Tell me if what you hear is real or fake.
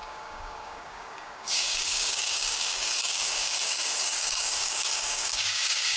fake